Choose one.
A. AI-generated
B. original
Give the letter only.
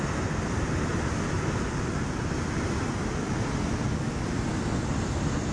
B